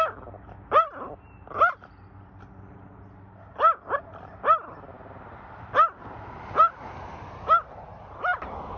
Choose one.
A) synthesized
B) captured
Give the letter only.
B